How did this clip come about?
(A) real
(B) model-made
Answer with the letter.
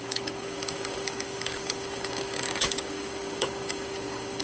B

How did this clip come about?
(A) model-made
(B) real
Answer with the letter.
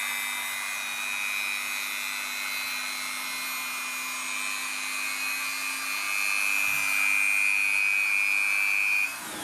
B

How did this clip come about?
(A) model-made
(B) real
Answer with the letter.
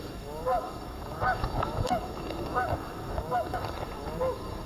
A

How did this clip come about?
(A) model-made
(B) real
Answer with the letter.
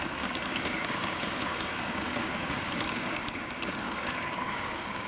A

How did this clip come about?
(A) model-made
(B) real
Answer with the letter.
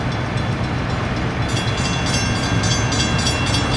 B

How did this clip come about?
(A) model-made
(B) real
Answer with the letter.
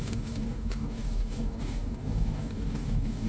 A